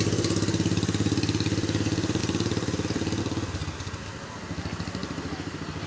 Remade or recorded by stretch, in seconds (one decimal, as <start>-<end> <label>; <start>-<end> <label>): 0.0-2.2 recorded; 2.2-3.2 remade; 3.2-5.9 recorded